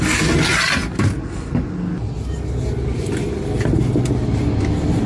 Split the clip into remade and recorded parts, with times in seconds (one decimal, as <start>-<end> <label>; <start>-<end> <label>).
0.0-5.1 recorded